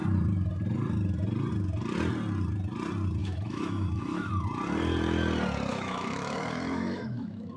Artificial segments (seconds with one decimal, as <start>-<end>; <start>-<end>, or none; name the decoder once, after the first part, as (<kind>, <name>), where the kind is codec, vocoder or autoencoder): 3.2-4.3 (autoencoder, DAC-VAE); 5.7-7.6